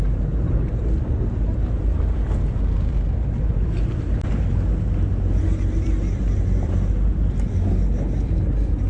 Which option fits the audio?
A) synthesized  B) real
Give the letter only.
B